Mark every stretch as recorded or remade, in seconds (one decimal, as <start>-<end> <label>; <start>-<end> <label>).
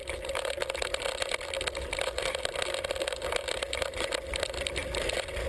0.0-5.5 recorded